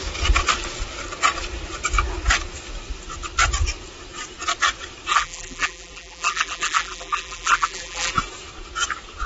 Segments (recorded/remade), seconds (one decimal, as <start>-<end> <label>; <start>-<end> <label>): 0.0-5.1 recorded; 5.1-8.1 remade; 8.1-9.3 recorded